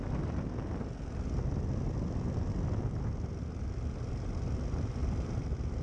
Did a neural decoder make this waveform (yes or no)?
no